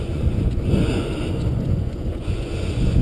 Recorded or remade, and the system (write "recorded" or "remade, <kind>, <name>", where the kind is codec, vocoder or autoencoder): remade, vocoder, Vocos